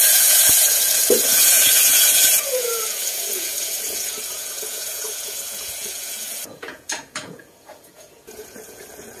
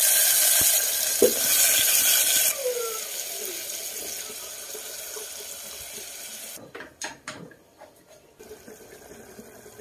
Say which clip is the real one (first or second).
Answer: second